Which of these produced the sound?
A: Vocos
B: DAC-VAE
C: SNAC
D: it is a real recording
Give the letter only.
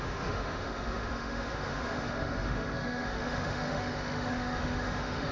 B